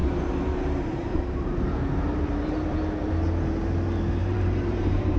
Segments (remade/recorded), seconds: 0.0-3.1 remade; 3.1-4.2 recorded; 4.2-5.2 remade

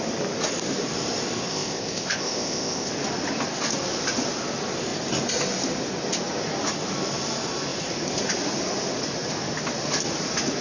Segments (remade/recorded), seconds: 0.0-1.5 recorded; 1.5-2.9 remade; 2.9-10.6 recorded